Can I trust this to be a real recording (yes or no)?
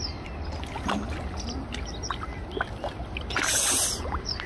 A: yes